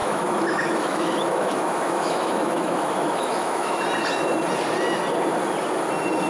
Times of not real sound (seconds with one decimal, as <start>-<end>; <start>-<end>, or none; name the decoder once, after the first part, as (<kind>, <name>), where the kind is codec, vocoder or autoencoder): 0.0-3.8 (autoencoder, DAC-VAE)